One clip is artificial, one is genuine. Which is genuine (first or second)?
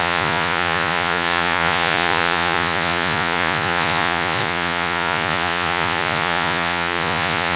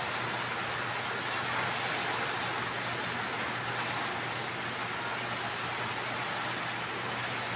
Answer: second